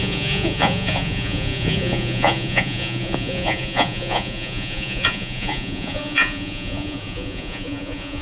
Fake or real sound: fake